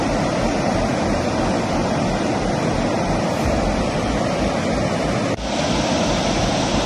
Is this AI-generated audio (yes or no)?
no